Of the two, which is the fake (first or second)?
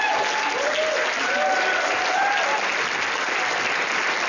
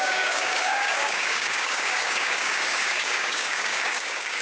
second